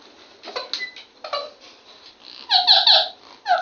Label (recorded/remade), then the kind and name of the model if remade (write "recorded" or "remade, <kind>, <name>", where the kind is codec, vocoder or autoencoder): recorded